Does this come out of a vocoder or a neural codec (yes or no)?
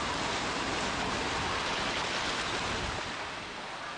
no